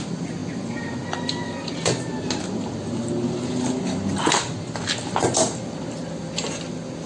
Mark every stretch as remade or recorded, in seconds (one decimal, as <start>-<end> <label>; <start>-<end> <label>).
0.0-7.1 recorded